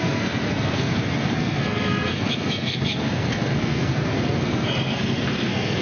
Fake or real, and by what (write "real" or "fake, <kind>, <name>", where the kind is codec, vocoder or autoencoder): fake, codec, SNAC